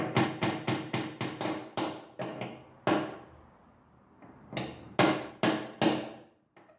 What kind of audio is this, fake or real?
real